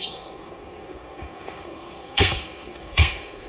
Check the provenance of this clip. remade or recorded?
remade